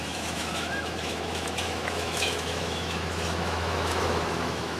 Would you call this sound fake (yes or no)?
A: yes